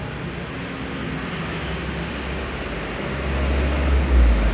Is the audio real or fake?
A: real